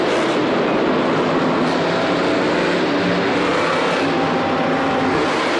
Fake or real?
real